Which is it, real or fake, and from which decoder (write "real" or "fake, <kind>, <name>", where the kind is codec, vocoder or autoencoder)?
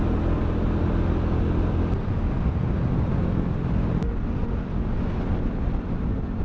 real